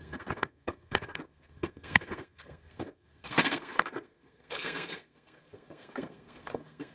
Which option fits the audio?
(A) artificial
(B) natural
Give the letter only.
A